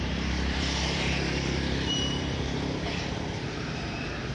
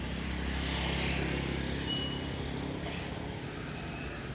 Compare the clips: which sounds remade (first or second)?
first